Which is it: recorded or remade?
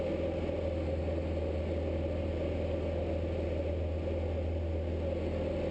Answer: recorded